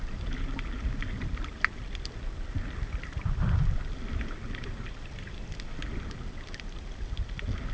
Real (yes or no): yes